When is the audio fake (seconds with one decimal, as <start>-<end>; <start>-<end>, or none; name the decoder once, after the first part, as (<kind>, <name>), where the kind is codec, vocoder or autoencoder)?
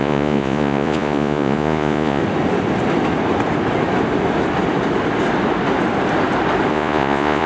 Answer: 0.0-2.2 (vocoder, Vocos); 6.7-7.5